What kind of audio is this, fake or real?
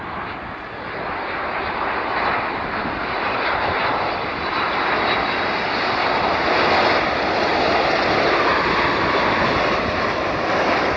real